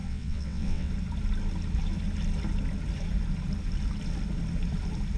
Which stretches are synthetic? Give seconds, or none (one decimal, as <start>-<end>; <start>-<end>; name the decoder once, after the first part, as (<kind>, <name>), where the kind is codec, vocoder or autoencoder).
0.0-0.9 (vocoder, WaveNeXt)